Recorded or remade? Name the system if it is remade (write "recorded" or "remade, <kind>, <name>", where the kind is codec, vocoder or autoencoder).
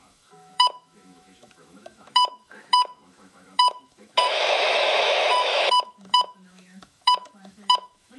remade, autoencoder, DAC-VAE